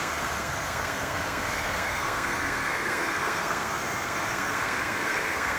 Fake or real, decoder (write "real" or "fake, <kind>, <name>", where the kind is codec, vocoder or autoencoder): fake, codec, SNAC